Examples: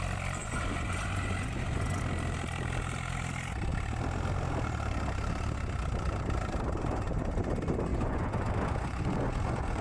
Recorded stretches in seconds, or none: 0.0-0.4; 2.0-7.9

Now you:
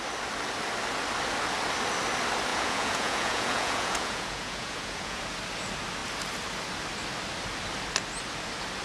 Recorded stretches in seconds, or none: 0.0-2.5; 5.2-8.8

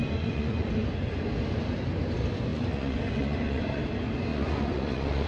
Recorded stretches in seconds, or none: 0.7-2.5; 3.8-4.3

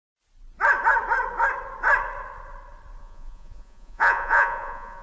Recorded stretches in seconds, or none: 0.0-3.0

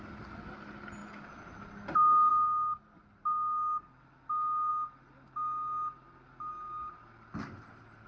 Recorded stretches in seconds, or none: 0.0-8.1